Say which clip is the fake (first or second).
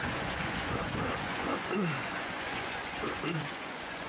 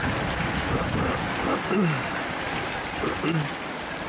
first